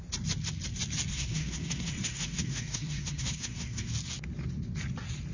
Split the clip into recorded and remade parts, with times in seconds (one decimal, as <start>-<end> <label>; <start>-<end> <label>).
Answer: 0.0-1.1 recorded; 1.1-3.9 remade; 3.9-5.3 recorded

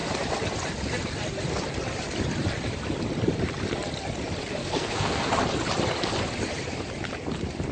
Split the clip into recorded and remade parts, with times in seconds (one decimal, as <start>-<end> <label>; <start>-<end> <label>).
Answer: 0.0-4.6 recorded; 4.6-5.3 remade; 5.3-7.7 recorded

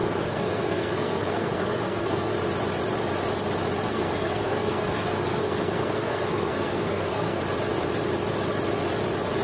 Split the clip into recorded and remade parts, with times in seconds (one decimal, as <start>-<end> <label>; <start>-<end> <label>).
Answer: 0.0-2.3 remade; 2.3-3.9 recorded; 3.9-7.4 remade; 7.4-9.4 recorded

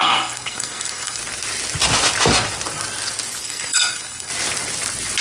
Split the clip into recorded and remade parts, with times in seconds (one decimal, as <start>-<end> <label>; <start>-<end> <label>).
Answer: 0.0-1.2 remade; 1.2-3.4 recorded; 3.4-4.3 remade; 4.3-5.2 recorded

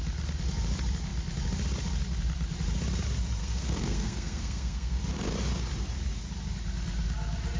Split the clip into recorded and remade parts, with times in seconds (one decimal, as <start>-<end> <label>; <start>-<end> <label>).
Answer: 0.0-3.4 recorded; 3.4-5.0 remade; 5.0-7.6 recorded

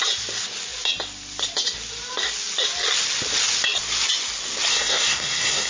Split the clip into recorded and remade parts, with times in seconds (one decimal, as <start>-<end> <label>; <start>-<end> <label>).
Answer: 0.0-4.7 recorded; 4.7-5.7 remade

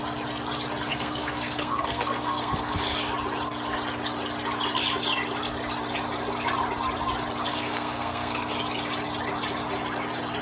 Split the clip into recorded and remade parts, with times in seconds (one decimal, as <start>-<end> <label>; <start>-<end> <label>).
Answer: 0.0-0.9 recorded; 0.9-2.7 remade; 2.7-7.5 recorded; 7.5-8.5 remade; 8.5-10.4 recorded

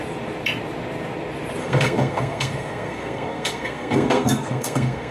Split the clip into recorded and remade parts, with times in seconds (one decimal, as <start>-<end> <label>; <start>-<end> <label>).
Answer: 0.0-1.6 recorded; 1.6-5.1 remade